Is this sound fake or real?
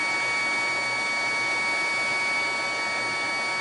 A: real